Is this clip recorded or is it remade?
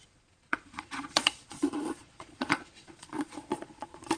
remade